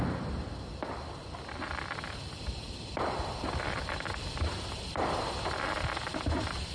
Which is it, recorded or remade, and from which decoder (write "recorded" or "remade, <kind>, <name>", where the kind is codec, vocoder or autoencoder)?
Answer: recorded